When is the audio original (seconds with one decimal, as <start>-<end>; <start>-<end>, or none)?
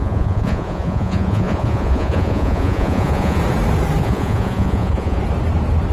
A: 3.4-4.0; 5.2-5.9